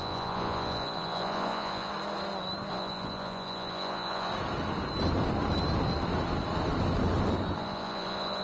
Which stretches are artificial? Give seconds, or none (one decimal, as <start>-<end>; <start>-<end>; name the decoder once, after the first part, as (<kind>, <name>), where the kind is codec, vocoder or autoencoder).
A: 0.0-1.9 (vocoder, Vocos); 2.7-4.3; 7.6-8.4